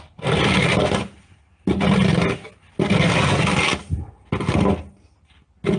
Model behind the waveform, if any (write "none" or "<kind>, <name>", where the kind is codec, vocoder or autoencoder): none